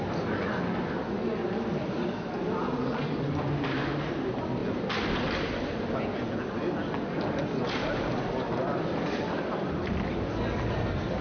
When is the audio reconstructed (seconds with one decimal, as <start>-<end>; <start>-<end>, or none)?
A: none